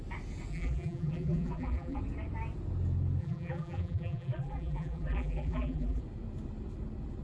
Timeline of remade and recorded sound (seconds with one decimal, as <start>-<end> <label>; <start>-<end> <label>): 0.0-0.5 recorded; 0.5-2.0 remade; 2.0-3.2 recorded; 3.2-6.0 remade; 6.0-7.2 recorded